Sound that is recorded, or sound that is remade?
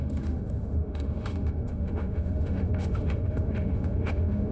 remade